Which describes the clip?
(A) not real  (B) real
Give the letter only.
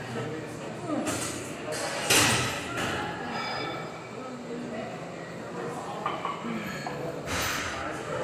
B